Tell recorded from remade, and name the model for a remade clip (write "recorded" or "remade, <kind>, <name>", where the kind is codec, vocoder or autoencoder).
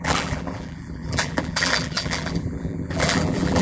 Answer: remade, vocoder, BigVGAN v2